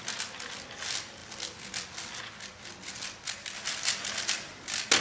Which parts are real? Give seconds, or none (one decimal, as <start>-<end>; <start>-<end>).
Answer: 0.0-5.0